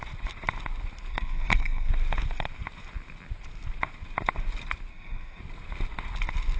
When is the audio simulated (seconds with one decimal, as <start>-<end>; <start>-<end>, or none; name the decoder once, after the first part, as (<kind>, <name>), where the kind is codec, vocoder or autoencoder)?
1.1-1.9 (codec, SNAC); 4.9-5.4